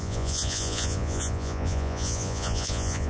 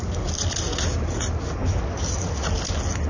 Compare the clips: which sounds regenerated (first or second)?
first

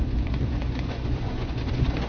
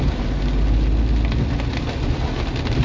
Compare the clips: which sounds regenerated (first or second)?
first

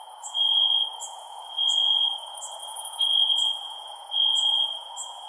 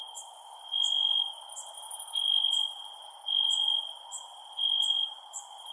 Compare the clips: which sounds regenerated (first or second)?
first